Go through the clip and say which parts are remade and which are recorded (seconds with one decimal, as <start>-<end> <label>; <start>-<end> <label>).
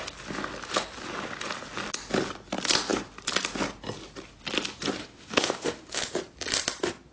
0.0-5.0 recorded; 5.0-6.0 remade; 6.0-7.1 recorded